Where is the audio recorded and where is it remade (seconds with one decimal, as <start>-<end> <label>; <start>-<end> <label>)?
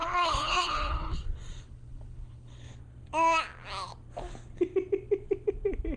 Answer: 0.0-2.8 remade; 2.8-6.0 recorded